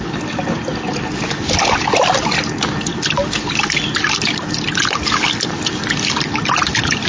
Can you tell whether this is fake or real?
real